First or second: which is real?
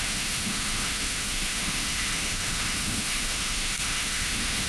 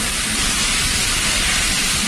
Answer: second